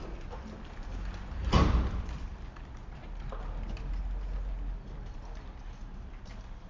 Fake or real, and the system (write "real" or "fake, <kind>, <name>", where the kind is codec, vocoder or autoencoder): real